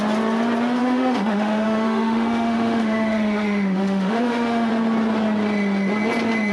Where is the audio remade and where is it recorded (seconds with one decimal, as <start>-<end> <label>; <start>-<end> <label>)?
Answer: 0.0-0.8 recorded; 0.8-4.7 remade; 4.7-6.5 recorded